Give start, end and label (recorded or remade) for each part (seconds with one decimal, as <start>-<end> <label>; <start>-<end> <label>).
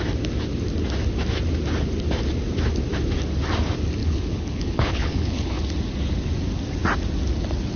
0.0-4.0 recorded; 4.0-5.6 remade; 5.6-7.8 recorded